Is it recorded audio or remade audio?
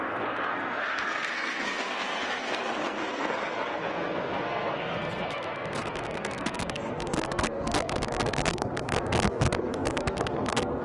remade